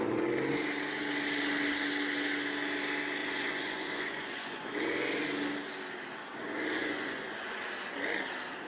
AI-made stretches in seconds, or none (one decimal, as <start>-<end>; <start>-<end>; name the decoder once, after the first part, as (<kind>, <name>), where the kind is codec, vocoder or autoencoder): 3.2-4.7 (vocoder, Vocos); 6.8-7.7